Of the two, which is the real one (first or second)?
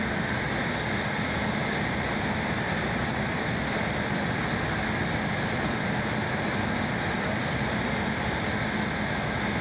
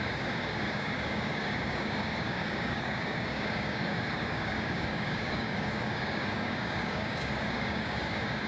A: first